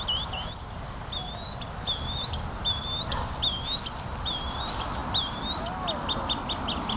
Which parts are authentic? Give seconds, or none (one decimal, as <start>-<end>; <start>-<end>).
0.0-7.0